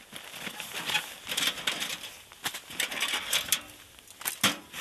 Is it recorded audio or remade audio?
recorded